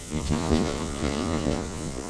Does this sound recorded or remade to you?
remade